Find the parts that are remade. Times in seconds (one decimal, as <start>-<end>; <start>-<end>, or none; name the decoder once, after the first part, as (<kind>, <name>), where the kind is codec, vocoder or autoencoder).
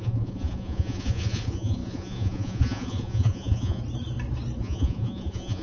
0.0-3.8 (vocoder, Vocos); 4.6-5.6